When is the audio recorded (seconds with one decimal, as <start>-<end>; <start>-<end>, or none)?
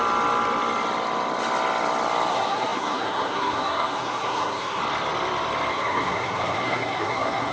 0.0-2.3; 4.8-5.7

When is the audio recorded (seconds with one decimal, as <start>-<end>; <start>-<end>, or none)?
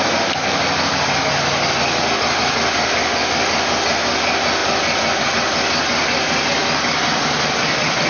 0.0-8.1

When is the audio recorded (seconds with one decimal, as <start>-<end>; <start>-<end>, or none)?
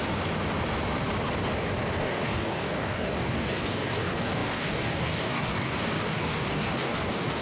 0.0-2.0